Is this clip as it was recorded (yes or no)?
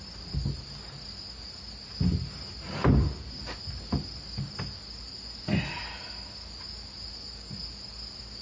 yes